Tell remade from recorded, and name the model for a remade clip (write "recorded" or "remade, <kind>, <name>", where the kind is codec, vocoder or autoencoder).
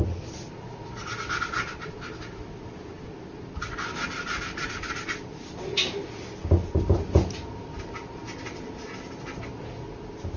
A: recorded